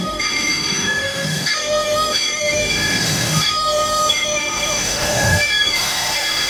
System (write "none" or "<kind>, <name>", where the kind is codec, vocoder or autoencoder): autoencoder, DAC-VAE